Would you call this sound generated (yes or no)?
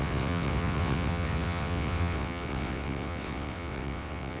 yes